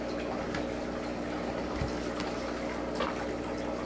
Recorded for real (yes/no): yes